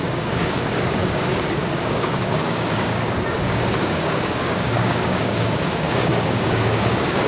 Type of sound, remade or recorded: remade